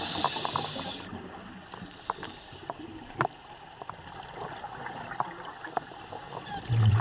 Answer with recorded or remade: recorded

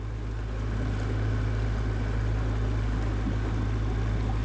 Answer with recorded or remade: recorded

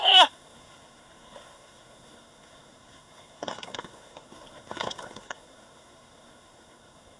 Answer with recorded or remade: remade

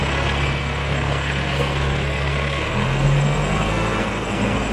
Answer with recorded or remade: remade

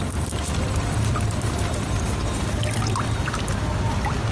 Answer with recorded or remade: recorded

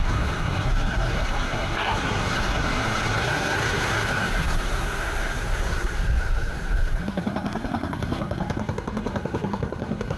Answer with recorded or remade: remade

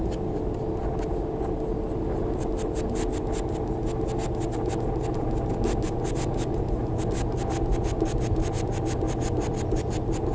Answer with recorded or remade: recorded